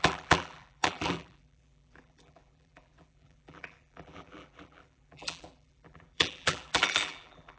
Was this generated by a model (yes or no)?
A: yes